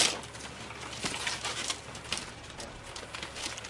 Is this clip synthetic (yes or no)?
no